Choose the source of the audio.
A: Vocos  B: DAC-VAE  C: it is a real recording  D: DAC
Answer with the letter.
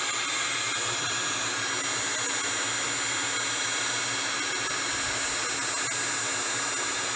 C